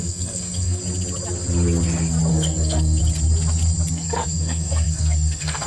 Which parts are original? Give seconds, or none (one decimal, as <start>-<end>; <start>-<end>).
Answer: 0.8-2.3; 3.0-3.9